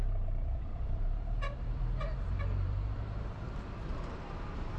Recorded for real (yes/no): no